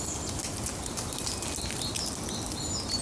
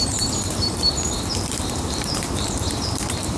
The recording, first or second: first